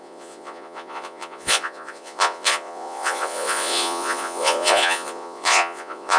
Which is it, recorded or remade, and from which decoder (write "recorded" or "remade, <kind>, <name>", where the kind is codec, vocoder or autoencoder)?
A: remade, vocoder, Vocos